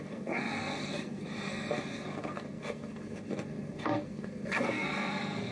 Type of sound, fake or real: fake